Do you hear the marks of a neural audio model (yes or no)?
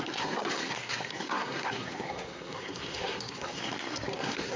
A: yes